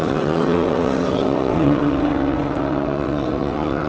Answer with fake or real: fake